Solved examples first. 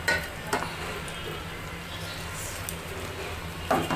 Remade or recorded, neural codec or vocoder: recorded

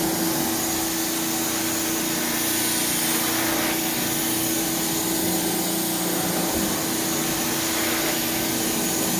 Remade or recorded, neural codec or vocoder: recorded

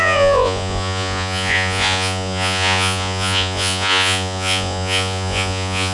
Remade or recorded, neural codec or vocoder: remade, vocoder, Vocos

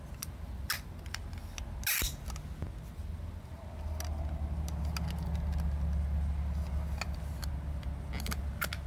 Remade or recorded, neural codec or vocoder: recorded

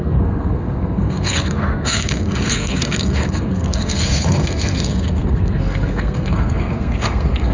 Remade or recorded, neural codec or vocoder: remade, codec, SNAC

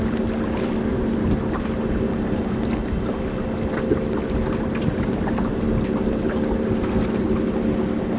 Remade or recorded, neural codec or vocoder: recorded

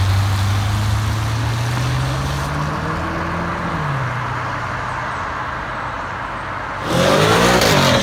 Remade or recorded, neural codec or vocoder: recorded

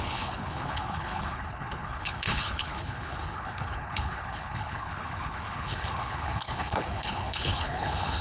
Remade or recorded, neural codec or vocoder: remade, codec, HILCodec